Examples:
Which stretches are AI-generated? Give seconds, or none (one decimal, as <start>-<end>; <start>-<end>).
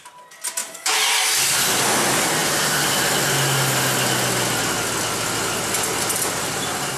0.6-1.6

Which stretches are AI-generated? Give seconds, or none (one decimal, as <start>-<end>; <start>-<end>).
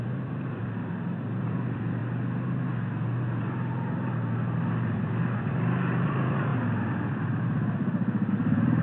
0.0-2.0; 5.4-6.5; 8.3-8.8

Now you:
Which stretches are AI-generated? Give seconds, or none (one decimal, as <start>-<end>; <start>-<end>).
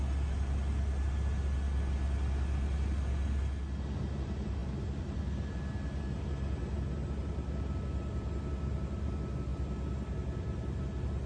none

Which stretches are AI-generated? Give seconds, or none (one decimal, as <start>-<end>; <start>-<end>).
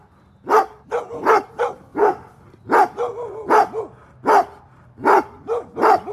1.0-1.9; 4.8-6.1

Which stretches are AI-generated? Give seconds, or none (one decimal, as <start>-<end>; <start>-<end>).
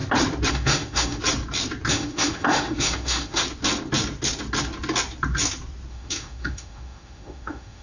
0.5-1.2; 1.9-3.4; 5.9-7.8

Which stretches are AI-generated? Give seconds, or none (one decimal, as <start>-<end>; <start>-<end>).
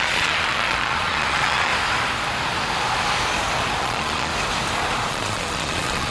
0.0-1.7; 3.8-4.3; 5.1-6.1